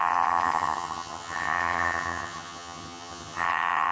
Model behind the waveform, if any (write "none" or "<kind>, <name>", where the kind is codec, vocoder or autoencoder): vocoder, HiFi-GAN